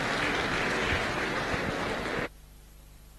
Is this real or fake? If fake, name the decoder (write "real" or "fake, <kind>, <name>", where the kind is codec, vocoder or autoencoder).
real